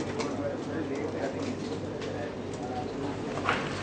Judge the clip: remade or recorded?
recorded